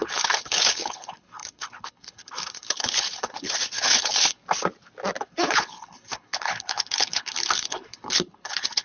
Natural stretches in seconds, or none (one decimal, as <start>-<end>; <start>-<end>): 4.4-5.2

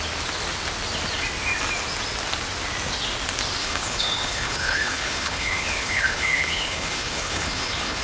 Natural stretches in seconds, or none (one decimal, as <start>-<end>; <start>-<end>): 0.0-3.6

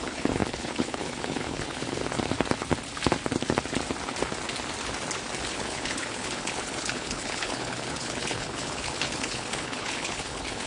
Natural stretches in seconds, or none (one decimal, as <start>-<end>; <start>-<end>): 2.0-5.4

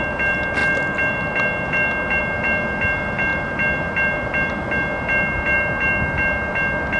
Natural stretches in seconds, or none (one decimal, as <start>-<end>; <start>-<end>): 0.0-7.0

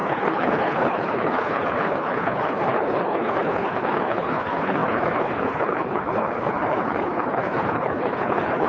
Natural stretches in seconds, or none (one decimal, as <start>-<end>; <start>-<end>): none

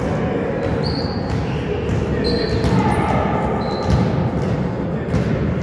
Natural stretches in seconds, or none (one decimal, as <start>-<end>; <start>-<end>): 0.0-5.6